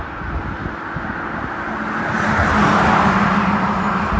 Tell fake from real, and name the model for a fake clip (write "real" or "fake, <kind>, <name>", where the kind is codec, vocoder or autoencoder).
real